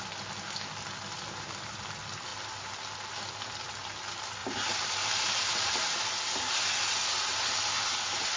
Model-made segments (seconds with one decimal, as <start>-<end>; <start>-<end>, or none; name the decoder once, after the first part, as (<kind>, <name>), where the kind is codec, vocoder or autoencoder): 4.4-5.7 (vocoder, BigVGAN v2)